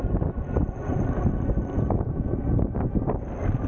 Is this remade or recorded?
recorded